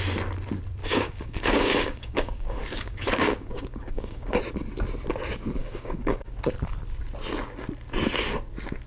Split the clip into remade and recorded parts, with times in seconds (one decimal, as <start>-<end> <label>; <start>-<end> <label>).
0.0-0.8 recorded; 0.8-4.4 remade; 4.4-5.6 recorded; 5.6-6.3 remade; 6.3-8.9 recorded